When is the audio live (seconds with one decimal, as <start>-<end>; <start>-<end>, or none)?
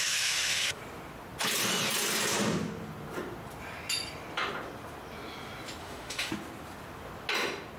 0.8-5.8; 6.3-7.8